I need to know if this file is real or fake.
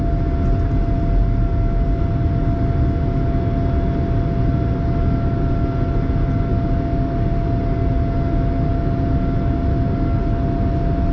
real